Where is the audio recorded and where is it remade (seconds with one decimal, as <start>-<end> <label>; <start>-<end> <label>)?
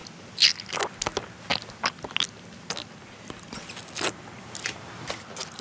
0.0-5.6 recorded